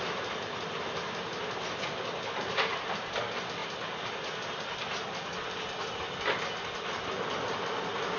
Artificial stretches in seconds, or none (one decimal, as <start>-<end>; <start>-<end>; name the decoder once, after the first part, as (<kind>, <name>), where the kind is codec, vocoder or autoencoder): none